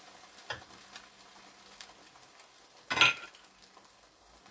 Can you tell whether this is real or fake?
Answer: real